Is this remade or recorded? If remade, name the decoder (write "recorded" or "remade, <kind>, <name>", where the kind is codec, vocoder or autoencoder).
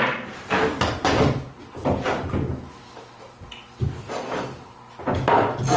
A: recorded